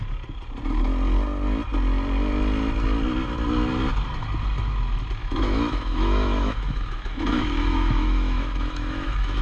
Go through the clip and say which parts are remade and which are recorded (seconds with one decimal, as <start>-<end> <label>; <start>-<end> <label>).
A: 0.0-5.2 recorded; 5.2-9.4 remade